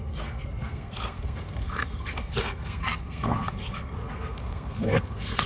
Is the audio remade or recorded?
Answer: remade